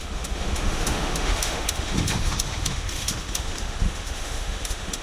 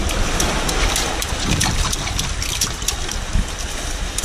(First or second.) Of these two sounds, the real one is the second